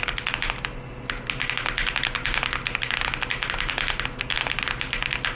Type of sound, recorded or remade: recorded